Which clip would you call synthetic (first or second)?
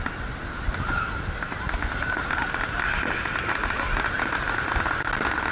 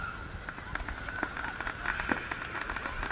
first